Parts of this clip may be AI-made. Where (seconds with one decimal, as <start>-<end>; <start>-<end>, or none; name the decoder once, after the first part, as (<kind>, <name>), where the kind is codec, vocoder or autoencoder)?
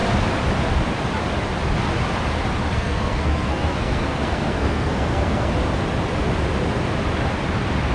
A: 2.7-5.5 (codec, SNAC)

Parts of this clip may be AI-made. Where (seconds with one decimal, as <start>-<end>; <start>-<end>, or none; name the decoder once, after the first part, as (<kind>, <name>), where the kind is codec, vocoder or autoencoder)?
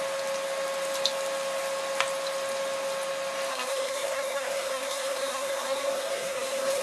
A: 3.5-6.8 (codec, SNAC)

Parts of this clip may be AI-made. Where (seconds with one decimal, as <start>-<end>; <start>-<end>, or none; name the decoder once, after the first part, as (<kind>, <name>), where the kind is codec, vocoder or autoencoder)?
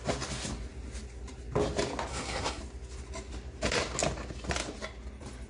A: 2.1-2.6 (codec, SNAC)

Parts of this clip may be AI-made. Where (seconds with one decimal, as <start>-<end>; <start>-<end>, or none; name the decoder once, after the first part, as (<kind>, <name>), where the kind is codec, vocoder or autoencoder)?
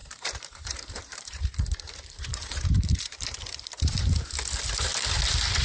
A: 0.0-4.9 (vocoder, BigVGAN v2)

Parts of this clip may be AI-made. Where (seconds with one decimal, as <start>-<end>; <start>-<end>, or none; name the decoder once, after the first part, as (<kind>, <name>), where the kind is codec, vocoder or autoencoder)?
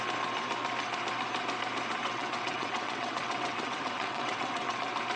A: 2.0-4.8 (vocoder, WaveNeXt)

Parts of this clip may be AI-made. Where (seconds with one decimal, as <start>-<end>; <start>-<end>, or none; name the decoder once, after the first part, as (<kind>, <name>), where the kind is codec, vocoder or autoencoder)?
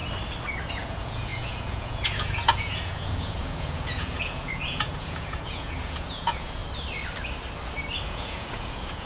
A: 0.7-6.6 (vocoder, Vocos); 8.0-9.1